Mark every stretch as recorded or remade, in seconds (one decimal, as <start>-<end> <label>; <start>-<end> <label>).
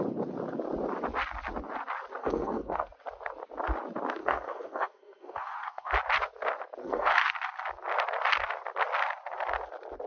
0.0-2.2 recorded; 2.2-2.9 remade; 2.9-4.2 recorded; 4.2-5.9 remade; 5.9-6.8 recorded; 6.8-7.3 remade; 7.3-10.1 recorded